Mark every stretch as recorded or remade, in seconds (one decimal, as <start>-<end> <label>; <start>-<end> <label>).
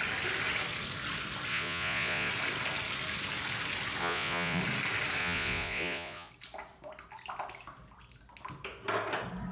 0.0-1.5 recorded; 1.5-2.3 remade; 2.3-4.0 recorded; 4.0-4.6 remade; 4.6-5.2 recorded; 5.2-6.3 remade; 6.3-9.5 recorded